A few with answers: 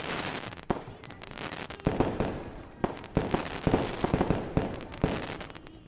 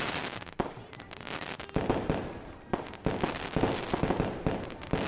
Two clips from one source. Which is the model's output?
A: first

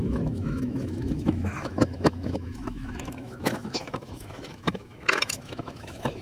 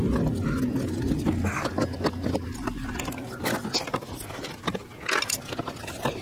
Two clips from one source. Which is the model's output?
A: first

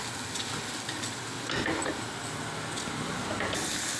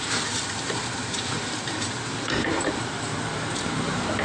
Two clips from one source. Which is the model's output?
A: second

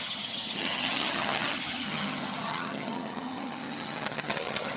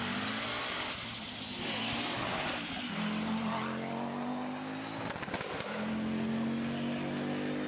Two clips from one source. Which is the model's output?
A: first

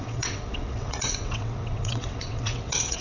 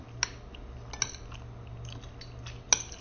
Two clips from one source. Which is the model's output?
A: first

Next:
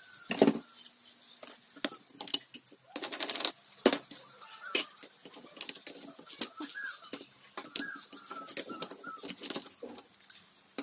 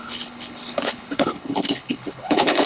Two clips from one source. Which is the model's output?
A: second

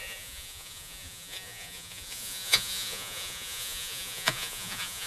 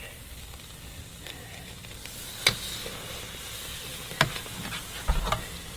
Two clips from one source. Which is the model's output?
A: first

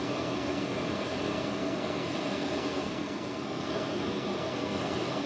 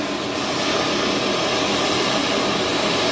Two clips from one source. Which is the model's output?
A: first